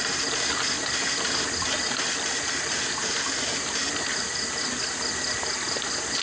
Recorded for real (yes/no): yes